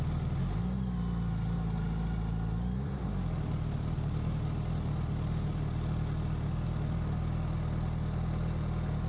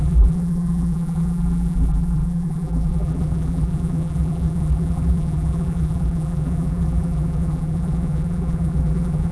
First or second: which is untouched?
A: first